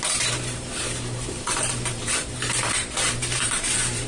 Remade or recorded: remade